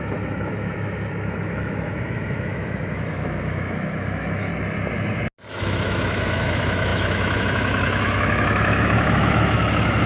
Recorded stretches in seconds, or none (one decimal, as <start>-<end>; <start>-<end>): 4.5-5.5